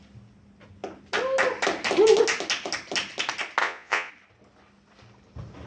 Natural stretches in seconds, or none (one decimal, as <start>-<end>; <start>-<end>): 0.0-3.6; 4.1-5.7